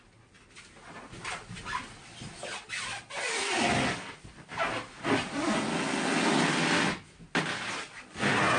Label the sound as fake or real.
real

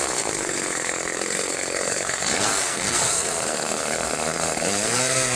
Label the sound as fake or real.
fake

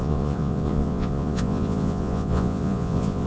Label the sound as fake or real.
fake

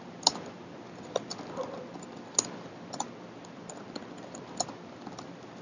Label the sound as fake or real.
real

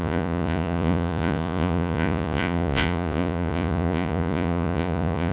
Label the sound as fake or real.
fake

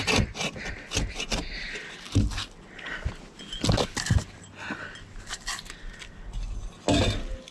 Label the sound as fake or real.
real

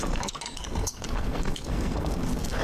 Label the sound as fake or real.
fake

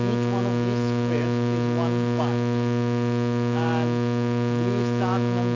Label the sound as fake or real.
real